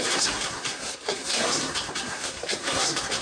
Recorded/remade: remade